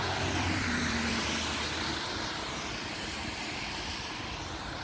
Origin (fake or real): fake